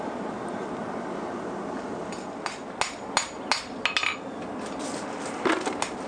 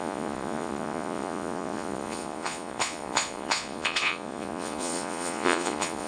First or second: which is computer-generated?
second